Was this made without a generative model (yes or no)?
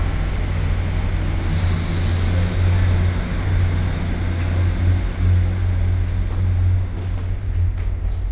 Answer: yes